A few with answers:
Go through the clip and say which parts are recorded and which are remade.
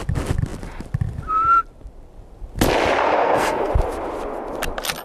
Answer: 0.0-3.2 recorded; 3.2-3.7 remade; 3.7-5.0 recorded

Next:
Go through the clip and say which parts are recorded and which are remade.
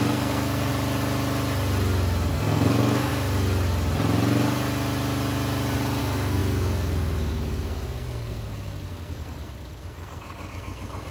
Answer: 0.0-0.7 remade; 0.7-2.3 recorded; 2.3-3.1 remade; 3.1-6.0 recorded; 6.0-11.1 remade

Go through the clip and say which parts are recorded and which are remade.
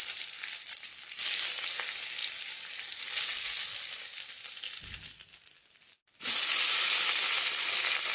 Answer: 0.0-8.1 recorded